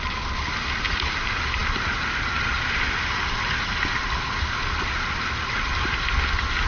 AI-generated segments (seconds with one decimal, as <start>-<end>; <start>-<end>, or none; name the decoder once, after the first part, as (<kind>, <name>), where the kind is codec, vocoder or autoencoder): none